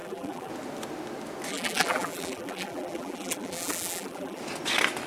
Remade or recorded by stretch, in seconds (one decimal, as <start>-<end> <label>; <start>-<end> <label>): 0.0-0.5 remade; 0.5-1.5 recorded; 1.5-4.4 remade; 4.4-5.1 recorded